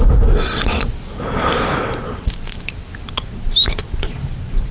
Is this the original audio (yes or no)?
yes